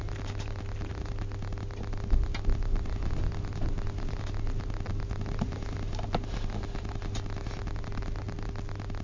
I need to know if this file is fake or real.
real